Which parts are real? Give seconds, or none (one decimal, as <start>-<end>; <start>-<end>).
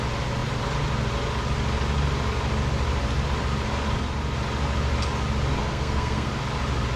0.0-5.6; 6.3-7.0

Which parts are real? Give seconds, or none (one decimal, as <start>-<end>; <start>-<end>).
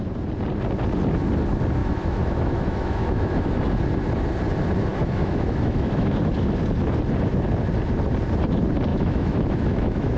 0.0-1.8; 3.6-4.9; 6.3-8.9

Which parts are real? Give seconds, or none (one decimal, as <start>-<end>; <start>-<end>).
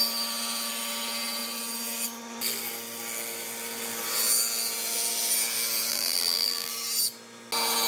0.0-5.9; 6.7-7.9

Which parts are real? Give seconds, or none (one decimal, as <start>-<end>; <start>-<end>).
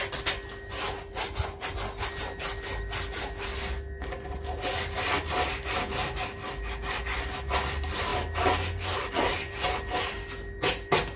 0.0-11.2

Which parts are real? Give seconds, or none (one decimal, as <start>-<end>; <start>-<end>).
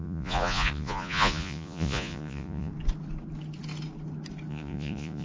2.7-4.5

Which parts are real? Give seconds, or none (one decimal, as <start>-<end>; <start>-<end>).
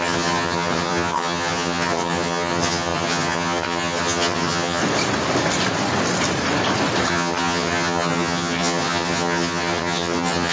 4.8-7.1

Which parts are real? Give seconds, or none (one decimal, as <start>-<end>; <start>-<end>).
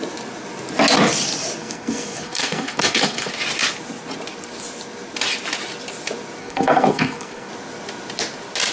0.0-1.6; 3.3-6.4; 7.5-8.7